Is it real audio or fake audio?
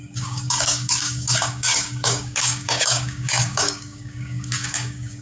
fake